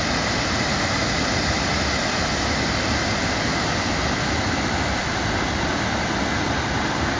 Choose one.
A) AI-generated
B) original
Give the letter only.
B